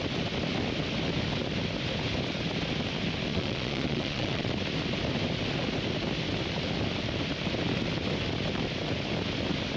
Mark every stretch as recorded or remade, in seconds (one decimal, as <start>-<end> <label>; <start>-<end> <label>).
0.0-3.3 recorded; 3.3-4.5 remade; 4.5-9.8 recorded